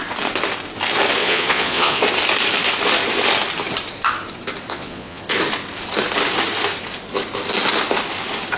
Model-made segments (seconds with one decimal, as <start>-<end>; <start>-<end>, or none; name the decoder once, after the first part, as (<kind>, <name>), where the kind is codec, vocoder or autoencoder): 1.2-2.0 (vocoder, Vocos); 4.7-5.2